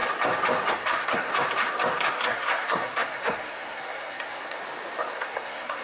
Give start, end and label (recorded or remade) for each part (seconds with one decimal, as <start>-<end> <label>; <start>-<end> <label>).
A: 0.0-0.7 recorded; 0.7-1.3 remade; 1.3-2.1 recorded; 2.1-4.6 remade; 4.6-5.1 recorded; 5.1-5.8 remade